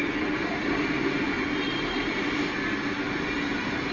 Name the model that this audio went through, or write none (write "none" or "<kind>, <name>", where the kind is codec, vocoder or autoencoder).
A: none